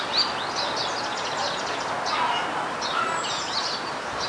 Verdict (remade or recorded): recorded